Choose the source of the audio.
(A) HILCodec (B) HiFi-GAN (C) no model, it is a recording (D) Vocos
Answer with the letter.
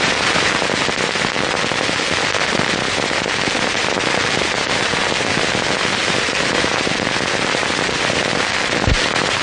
C